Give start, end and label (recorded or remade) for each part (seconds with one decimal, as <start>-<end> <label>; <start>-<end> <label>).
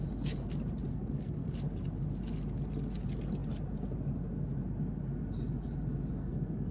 0.0-0.9 recorded; 0.9-1.5 remade; 1.5-6.2 recorded; 6.2-6.7 remade